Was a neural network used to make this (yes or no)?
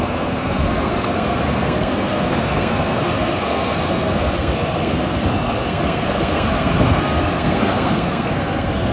yes